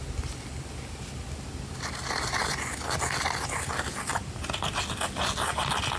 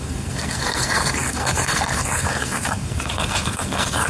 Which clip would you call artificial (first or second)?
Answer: second